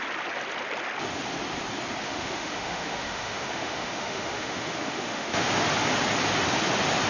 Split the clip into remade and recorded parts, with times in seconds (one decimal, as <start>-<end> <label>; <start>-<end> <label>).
0.0-2.0 recorded; 2.0-5.5 remade; 5.5-7.1 recorded